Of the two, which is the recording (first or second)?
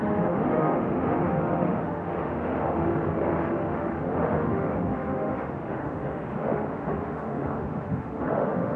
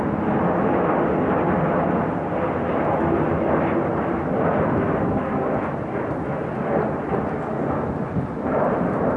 second